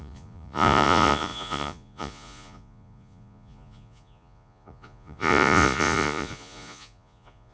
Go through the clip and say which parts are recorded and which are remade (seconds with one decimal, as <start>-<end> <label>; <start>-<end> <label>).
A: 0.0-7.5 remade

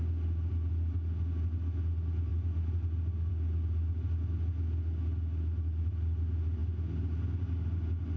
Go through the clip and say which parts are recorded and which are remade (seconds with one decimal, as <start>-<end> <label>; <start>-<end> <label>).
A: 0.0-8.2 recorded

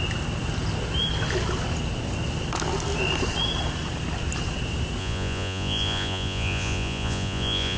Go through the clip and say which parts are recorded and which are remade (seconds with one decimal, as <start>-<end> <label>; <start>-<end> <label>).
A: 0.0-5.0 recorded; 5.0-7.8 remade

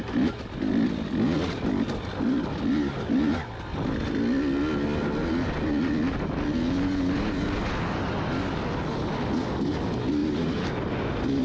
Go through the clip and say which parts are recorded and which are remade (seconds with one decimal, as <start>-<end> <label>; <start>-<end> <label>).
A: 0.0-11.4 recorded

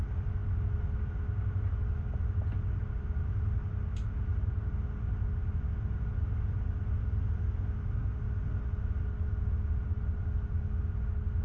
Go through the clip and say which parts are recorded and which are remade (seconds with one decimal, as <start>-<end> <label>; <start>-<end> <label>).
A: 0.0-11.4 recorded

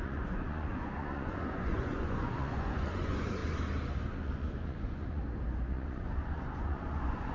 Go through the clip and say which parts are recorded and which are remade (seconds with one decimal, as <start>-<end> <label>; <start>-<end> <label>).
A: 0.0-3.4 remade; 3.4-4.1 recorded; 4.1-5.2 remade; 5.2-5.7 recorded; 5.7-7.3 remade

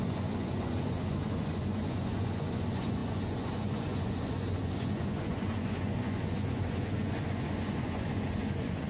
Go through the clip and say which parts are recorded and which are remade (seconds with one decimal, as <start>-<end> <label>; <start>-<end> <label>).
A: 0.0-8.9 remade

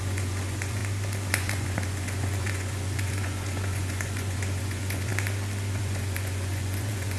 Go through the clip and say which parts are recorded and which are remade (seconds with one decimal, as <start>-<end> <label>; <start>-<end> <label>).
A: 0.0-0.8 remade; 0.8-1.3 recorded; 1.3-5.1 remade; 5.1-5.7 recorded; 5.7-7.2 remade